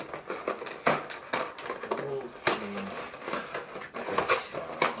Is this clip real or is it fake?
real